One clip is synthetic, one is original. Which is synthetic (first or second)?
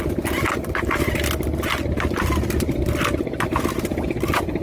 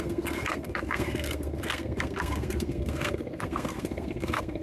second